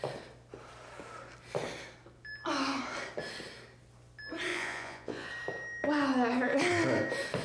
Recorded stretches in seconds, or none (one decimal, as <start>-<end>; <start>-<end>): 0.0-4.5; 5.3-7.4

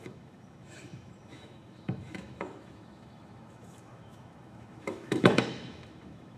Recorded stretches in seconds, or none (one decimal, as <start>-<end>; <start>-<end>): none

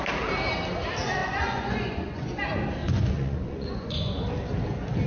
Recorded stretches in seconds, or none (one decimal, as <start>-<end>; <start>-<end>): 0.0-1.2; 2.4-2.8; 4.3-5.1

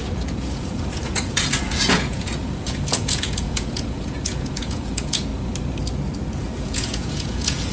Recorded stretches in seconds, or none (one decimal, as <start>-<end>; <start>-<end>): 5.3-6.6

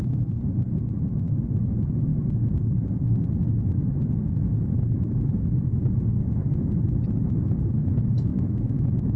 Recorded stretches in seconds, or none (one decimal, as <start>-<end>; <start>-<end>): 0.0-8.3

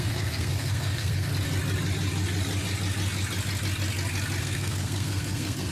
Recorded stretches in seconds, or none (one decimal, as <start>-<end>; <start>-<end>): 1.3-4.4

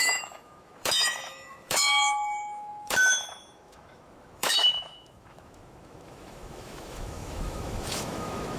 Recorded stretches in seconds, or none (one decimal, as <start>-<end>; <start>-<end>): none